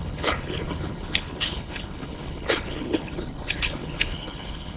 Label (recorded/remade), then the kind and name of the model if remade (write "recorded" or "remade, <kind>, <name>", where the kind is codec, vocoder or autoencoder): remade, codec, HILCodec